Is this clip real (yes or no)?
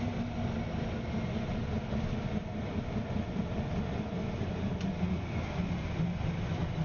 yes